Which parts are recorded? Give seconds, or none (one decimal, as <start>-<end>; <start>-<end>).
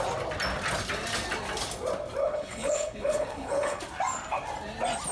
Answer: 0.0-2.2; 3.8-5.1